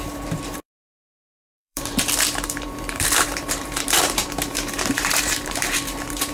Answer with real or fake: fake